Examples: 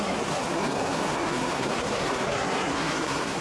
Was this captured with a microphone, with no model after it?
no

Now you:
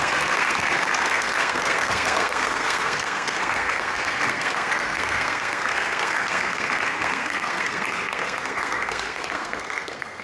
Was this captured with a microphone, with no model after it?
no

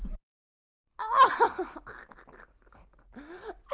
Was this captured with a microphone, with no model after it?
yes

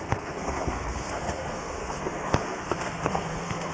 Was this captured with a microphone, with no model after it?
no